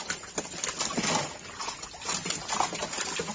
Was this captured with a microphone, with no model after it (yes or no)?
yes